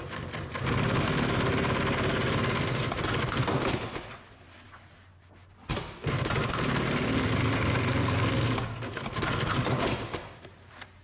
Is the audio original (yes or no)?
yes